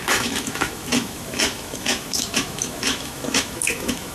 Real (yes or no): no